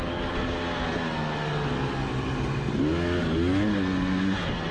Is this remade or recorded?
recorded